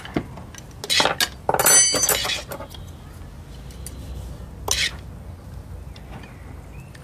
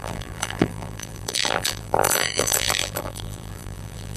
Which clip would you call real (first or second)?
first